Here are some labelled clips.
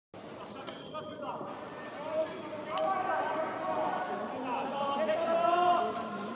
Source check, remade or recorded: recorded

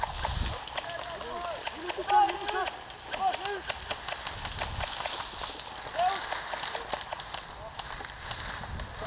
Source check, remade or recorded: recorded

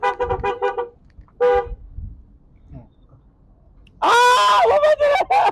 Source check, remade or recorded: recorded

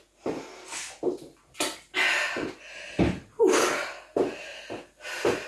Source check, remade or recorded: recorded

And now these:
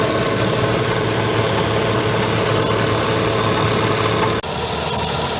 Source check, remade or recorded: recorded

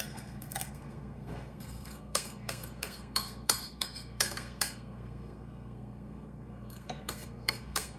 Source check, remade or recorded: remade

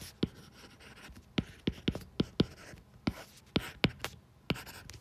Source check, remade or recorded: recorded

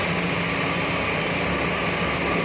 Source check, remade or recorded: recorded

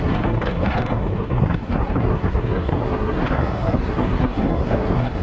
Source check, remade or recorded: remade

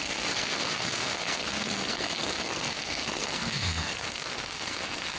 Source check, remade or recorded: remade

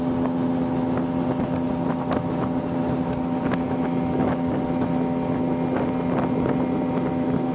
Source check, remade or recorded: recorded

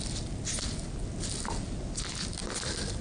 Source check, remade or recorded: recorded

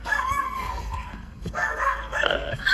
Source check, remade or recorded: remade